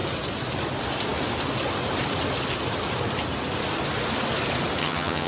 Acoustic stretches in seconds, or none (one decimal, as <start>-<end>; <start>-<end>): 0.0-4.8